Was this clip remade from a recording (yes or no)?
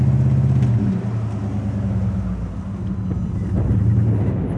no